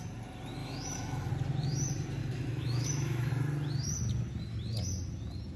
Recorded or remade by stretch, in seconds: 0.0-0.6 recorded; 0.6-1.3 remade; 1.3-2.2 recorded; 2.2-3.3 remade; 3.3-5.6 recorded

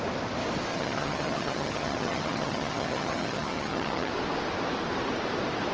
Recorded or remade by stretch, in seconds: 0.0-0.7 recorded; 0.7-4.1 remade; 4.1-5.7 recorded

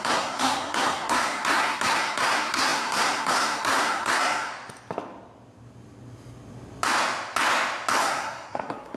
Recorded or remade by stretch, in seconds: 0.0-4.5 remade; 4.5-8.0 recorded; 8.0-9.0 remade

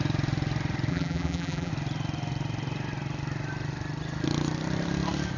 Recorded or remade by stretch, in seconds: 0.0-0.9 recorded; 0.9-1.7 remade; 1.7-5.4 recorded

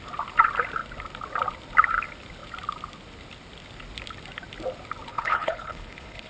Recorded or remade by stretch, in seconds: 0.0-5.1 recorded; 5.1-6.3 remade